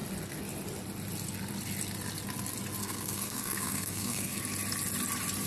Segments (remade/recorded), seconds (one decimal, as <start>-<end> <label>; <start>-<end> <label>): 0.0-2.8 recorded; 2.8-4.4 remade; 4.4-5.5 recorded